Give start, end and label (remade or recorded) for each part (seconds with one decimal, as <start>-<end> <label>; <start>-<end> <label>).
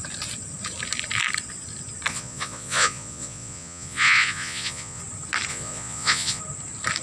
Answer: 0.0-2.1 recorded; 2.1-5.0 remade; 5.0-5.5 recorded; 5.5-6.4 remade; 6.4-7.0 recorded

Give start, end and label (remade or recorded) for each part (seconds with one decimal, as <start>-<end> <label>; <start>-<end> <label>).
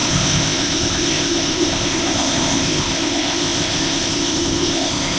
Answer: 0.0-5.2 remade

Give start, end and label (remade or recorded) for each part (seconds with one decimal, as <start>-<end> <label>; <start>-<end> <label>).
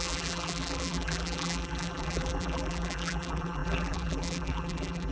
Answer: 0.0-5.1 remade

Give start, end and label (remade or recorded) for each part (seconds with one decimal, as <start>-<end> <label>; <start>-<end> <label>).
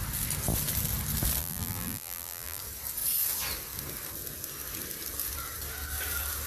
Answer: 0.0-1.4 recorded; 1.4-2.6 remade; 2.6-6.5 recorded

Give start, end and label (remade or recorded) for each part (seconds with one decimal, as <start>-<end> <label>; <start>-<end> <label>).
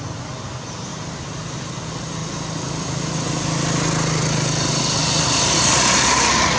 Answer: 0.0-0.9 recorded; 0.9-1.6 remade; 1.6-6.6 recorded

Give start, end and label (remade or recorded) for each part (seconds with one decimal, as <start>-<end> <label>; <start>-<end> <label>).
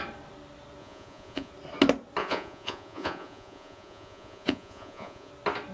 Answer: 0.0-0.8 recorded; 0.8-1.5 remade; 1.5-2.2 recorded; 2.2-5.3 remade; 5.3-5.7 recorded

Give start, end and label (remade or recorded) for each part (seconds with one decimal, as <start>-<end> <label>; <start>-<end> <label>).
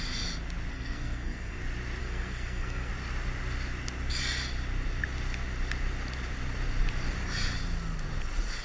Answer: 0.0-0.7 recorded; 0.7-1.6 remade; 1.6-2.0 recorded; 2.0-2.9 remade; 2.9-8.6 recorded